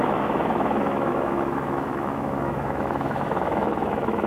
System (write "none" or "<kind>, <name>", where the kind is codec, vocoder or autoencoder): autoencoder, DAC-VAE